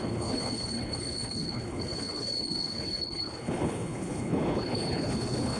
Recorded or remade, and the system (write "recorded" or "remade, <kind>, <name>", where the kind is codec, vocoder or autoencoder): remade, codec, HILCodec